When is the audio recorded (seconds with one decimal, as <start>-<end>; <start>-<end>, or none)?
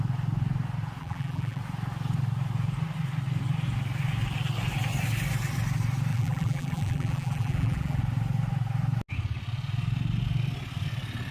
0.0-1.0; 1.6-6.1; 8.0-11.3